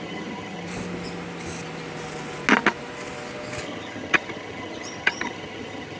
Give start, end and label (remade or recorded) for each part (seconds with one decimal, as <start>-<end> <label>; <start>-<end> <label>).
0.0-0.7 remade; 0.7-3.6 recorded; 3.6-6.0 remade

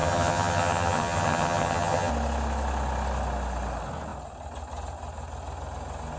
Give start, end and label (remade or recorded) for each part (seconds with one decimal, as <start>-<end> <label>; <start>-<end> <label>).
0.0-2.1 remade; 2.1-6.2 recorded

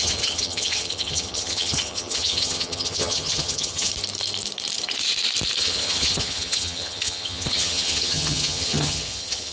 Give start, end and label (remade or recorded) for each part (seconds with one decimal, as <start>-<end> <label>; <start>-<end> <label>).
0.0-3.9 remade; 3.9-5.6 recorded; 5.6-9.5 remade

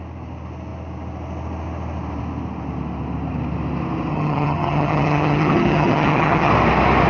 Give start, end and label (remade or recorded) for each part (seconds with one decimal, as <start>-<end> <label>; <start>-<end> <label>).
0.0-4.1 recorded; 4.1-6.5 remade; 6.5-7.1 recorded

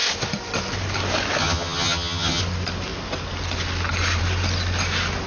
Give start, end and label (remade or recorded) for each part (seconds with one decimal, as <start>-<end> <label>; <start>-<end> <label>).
0.0-1.4 recorded; 1.4-2.4 remade; 2.4-5.3 recorded

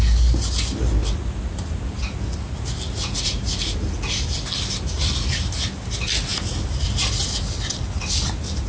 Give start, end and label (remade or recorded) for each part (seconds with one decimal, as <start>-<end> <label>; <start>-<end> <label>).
0.0-8.7 recorded